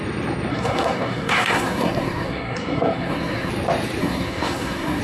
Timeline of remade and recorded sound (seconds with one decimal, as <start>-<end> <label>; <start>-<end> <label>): 0.0-0.5 recorded; 0.5-3.5 remade; 3.5-4.0 recorded; 4.0-5.0 remade